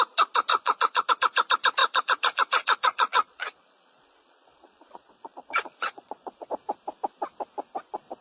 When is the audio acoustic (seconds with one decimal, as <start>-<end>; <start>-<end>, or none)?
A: 0.0-0.5; 1.1-1.8; 6.5-8.2